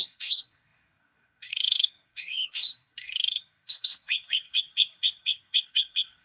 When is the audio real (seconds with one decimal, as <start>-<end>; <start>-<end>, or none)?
none